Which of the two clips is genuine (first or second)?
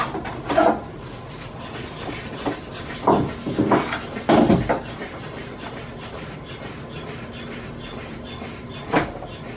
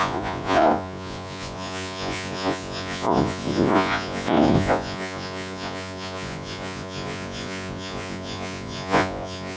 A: first